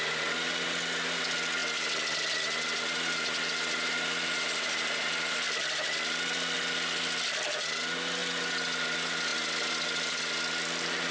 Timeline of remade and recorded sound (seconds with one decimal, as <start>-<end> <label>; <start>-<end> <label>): 0.0-11.1 recorded